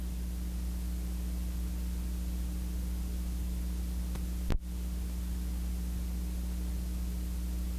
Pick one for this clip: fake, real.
real